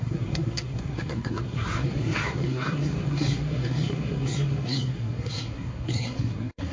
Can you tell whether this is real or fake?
fake